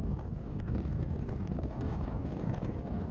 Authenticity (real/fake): fake